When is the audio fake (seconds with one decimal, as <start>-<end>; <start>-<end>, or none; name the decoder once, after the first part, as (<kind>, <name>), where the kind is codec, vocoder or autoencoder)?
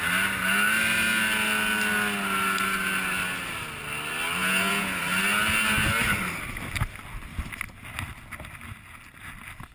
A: 4.4-5.0 (vocoder, Vocos)